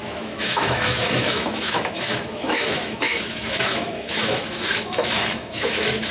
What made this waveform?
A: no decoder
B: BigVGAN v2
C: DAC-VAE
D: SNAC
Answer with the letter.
C